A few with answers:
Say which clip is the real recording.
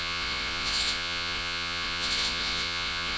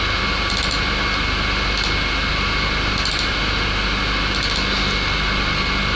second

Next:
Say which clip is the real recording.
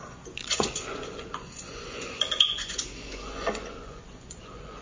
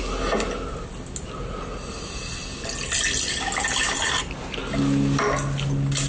second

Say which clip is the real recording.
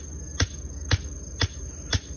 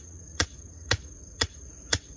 first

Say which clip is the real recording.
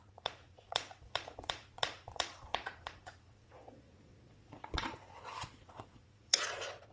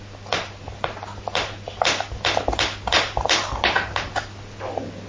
second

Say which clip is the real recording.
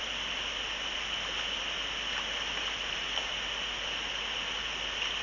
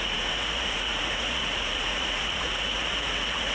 first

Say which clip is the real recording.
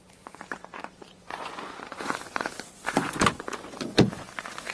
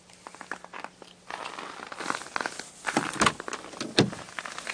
second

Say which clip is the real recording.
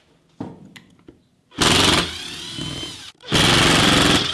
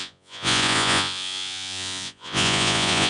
first